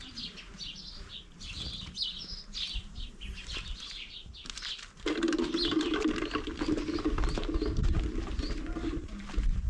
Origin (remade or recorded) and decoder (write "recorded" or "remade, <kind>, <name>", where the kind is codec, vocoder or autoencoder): recorded